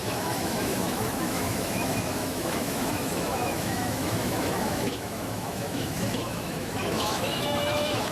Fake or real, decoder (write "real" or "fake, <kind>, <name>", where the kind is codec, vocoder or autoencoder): fake, autoencoder, DAC-VAE